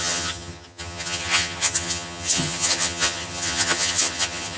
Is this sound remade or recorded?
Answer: remade